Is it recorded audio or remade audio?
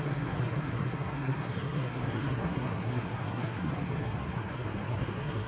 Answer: remade